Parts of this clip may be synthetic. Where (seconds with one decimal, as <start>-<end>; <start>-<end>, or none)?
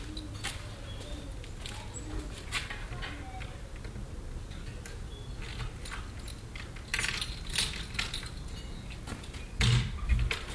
none